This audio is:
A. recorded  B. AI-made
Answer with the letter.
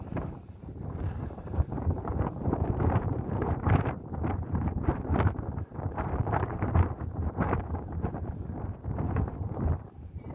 B